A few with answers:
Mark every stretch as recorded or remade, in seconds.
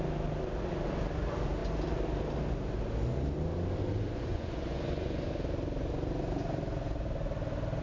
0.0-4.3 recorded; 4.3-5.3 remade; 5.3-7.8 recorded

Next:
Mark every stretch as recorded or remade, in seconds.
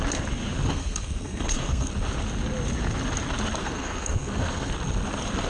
0.0-0.7 recorded; 0.7-1.9 remade; 1.9-3.6 recorded; 3.6-4.7 remade; 4.7-5.5 recorded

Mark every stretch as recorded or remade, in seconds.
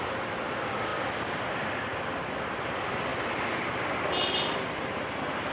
0.0-5.5 recorded